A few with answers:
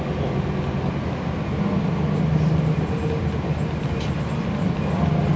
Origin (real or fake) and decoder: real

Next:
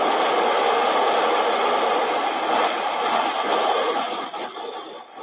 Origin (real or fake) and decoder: real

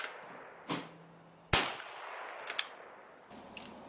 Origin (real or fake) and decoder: real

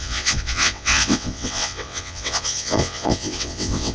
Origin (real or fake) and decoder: fake, vocoder, WaveNeXt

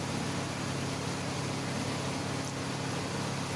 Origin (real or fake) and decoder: real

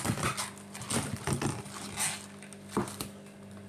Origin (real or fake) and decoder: real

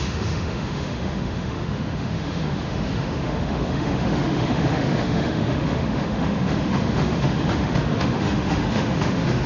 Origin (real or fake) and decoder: fake, autoencoder, DAC-VAE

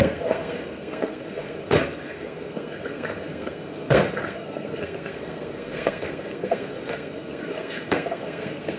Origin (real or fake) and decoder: fake, codec, SNAC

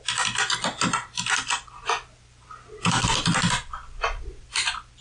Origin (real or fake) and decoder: real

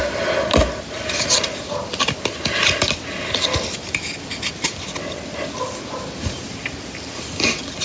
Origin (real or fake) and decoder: real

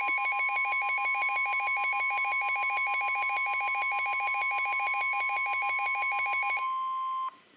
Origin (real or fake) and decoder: real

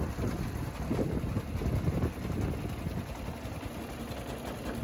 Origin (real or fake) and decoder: real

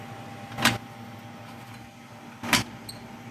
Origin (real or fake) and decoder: real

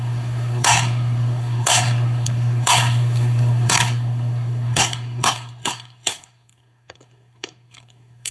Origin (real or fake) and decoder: fake, codec, SNAC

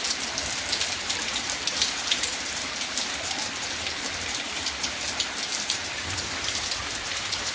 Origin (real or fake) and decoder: fake, vocoder, BigVGAN v2